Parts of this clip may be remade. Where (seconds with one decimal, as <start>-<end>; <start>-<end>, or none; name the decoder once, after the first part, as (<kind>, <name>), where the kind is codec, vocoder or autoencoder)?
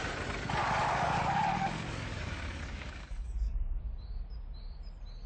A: 0.6-3.8 (codec, DAC)